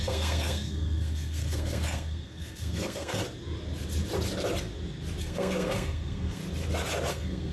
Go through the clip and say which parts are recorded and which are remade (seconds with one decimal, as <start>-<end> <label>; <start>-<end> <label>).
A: 0.0-3.2 remade; 3.2-5.2 recorded; 5.2-6.4 remade; 6.4-7.1 recorded; 7.1-7.5 remade